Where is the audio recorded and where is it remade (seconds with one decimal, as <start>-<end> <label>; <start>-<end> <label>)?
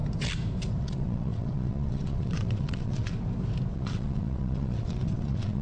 0.0-0.8 recorded; 0.8-3.1 remade; 3.1-3.7 recorded; 3.7-5.6 remade